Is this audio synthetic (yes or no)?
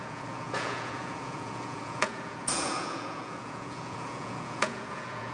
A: yes